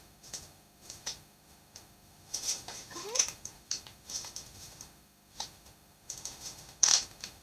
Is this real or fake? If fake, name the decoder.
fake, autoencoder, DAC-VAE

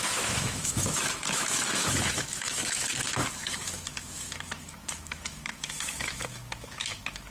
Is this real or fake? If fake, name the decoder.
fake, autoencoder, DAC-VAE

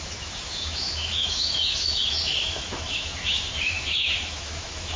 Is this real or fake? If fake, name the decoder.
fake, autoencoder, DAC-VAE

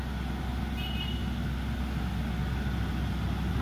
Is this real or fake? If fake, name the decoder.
real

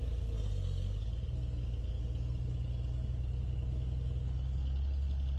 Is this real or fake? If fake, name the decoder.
real